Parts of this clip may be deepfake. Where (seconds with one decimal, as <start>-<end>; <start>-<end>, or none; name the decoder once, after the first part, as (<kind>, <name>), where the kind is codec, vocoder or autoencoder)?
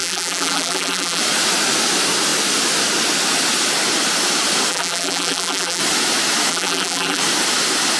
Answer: 0.0-1.2 (vocoder, BigVGAN v2); 4.7-5.8; 6.5-7.2